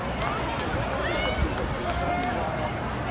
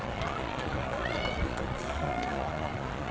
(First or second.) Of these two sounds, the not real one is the second